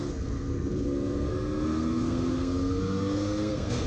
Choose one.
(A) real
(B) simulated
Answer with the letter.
B